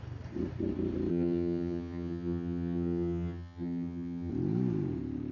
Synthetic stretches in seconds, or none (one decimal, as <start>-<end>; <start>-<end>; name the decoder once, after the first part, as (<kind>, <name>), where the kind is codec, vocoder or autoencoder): 1.1-4.3 (vocoder, HiFi-GAN)